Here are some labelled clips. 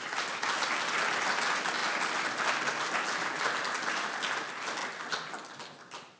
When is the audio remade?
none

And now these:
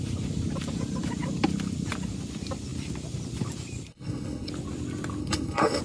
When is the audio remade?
3.9-4.5 (codec, HILCodec); 5.2-5.8

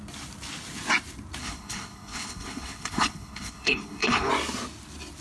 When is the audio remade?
1.4-4.3 (codec, HILCodec)

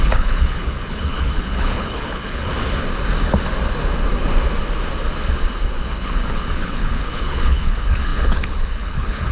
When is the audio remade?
0.0-2.5 (codec, HILCodec); 5.9-9.3

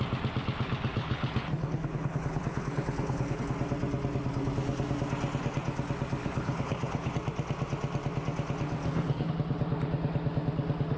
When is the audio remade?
1.0-3.4 (codec, HILCodec); 6.2-7.1; 8.8-9.3